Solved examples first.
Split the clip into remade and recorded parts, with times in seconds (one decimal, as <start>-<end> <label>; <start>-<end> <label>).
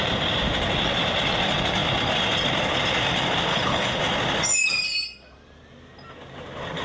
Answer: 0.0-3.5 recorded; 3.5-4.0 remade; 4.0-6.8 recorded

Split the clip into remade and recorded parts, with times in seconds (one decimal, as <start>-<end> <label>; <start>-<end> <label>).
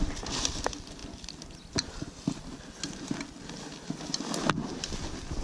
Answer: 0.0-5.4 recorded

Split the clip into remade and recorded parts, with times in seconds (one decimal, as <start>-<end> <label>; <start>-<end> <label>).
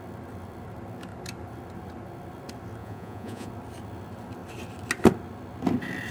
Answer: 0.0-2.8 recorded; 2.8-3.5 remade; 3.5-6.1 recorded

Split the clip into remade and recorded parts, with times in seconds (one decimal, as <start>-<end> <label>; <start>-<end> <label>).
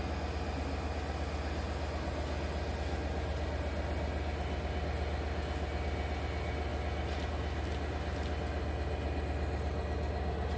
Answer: 0.0-10.6 recorded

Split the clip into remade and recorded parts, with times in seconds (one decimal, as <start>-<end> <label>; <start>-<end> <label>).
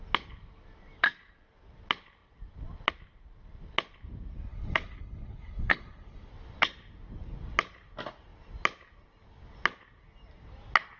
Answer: 0.0-4.5 recorded; 4.5-6.3 remade; 6.3-11.0 recorded